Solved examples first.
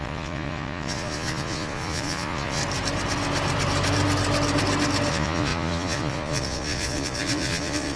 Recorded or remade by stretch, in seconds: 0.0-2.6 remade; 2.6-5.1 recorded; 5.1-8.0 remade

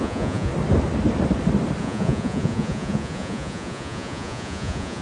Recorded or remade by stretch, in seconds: 0.0-0.5 remade; 0.5-1.8 recorded; 1.8-5.0 remade

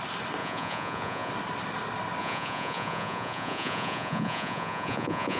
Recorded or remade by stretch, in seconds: 0.0-0.4 recorded; 0.4-1.3 remade; 1.3-2.2 recorded; 2.2-5.4 remade

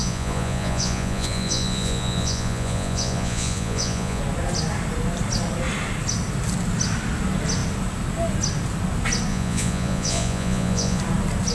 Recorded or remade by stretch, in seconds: 0.0-4.2 remade; 4.2-9.3 recorded; 9.3-11.0 remade; 11.0-11.5 recorded

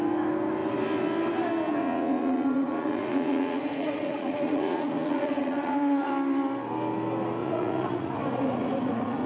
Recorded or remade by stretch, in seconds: 0.0-1.8 recorded; 1.8-6.1 remade; 6.1-7.4 recorded; 7.4-9.3 remade

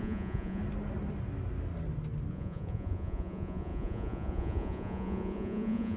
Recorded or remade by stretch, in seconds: 0.0-0.6 remade; 0.6-2.3 recorded; 2.3-6.0 remade